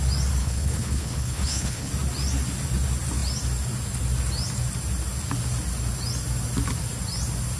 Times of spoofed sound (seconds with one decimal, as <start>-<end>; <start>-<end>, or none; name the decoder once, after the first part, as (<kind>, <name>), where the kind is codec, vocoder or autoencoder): 0.4-1.9 (codec, HILCodec)